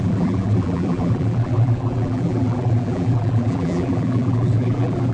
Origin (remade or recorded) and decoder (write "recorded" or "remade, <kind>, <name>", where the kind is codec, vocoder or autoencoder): remade, vocoder, BigVGAN v2